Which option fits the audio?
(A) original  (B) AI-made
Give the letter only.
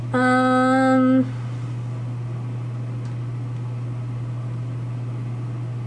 A